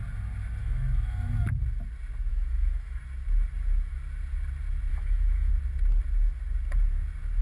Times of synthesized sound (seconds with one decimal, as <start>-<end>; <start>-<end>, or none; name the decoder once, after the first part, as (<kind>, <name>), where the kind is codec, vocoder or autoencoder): 0.6-1.6 (autoencoder, DAC-VAE); 2.3-3.0; 4.9-5.5